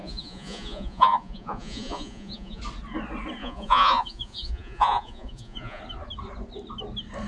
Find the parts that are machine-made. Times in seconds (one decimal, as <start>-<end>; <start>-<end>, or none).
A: 0.0-2.6; 3.4-5.8